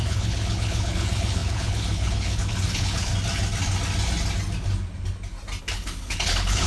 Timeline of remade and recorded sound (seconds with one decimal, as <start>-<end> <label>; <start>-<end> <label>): 0.0-3.1 remade; 3.1-5.6 recorded; 5.6-6.7 remade